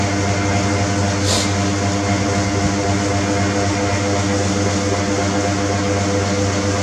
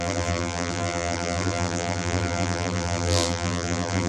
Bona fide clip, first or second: first